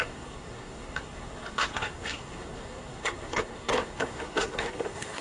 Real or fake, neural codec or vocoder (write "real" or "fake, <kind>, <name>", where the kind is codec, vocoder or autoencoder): fake, codec, SNAC